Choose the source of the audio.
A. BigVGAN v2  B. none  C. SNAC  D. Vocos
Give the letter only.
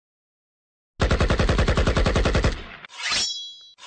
B